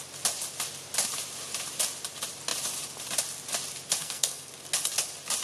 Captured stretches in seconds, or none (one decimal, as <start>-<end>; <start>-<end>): 0.0-4.0; 4.5-5.4